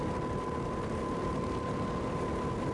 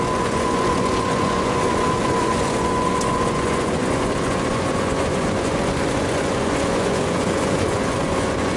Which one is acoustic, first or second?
first